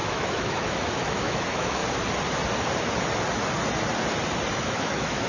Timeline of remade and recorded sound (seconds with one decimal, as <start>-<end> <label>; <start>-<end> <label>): 0.0-1.8 remade; 1.8-4.5 recorded; 4.5-5.3 remade